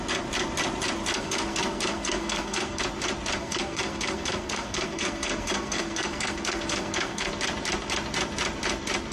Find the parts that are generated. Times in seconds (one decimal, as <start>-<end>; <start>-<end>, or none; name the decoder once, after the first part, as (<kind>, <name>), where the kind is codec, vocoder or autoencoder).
1.1-2.8 (codec, SNAC); 3.4-7.3